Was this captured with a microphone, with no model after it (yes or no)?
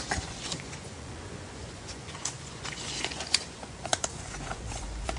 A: no